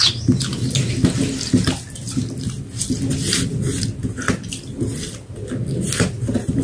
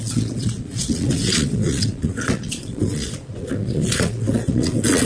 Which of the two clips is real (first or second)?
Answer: first